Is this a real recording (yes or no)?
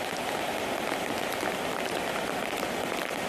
yes